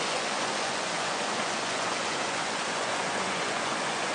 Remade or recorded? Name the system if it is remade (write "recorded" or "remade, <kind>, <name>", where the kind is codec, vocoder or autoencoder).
remade, vocoder, Vocos